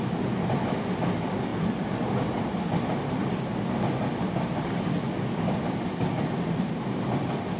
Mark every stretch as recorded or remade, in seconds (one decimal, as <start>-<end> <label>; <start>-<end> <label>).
0.0-7.6 recorded